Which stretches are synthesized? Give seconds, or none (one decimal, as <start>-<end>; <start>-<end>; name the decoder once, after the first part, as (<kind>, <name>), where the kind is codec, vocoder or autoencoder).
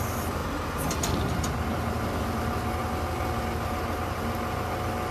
none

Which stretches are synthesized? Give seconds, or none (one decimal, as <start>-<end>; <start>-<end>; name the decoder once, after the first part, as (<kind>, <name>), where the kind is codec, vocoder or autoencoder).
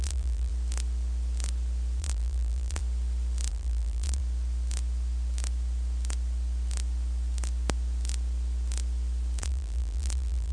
0.0-0.5 (vocoder, BigVGAN v2); 2.0-2.8; 3.5-4.2; 9.4-10.5